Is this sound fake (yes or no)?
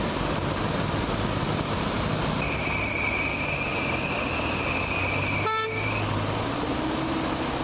no